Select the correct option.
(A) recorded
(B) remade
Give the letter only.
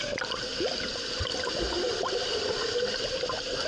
A